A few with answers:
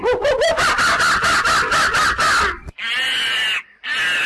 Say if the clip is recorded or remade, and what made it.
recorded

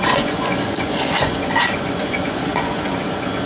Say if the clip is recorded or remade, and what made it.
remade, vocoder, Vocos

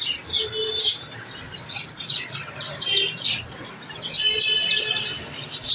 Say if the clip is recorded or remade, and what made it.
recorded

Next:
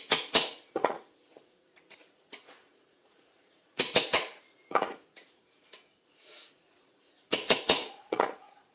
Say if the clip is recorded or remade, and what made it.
remade, vocoder, Vocos